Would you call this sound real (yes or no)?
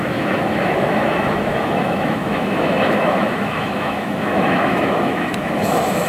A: no